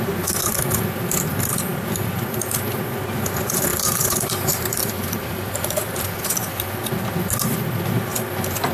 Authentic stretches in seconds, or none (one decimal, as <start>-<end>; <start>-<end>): 0.0-3.7; 5.8-8.7